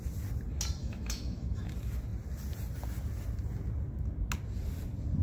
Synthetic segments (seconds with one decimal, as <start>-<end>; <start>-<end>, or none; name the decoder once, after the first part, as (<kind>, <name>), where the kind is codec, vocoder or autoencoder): 0.8-1.7 (autoencoder, DAC-VAE)